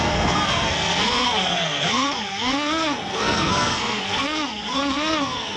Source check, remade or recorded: remade